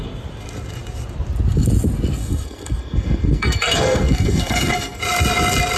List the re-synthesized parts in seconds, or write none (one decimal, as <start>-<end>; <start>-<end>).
2.2-5.0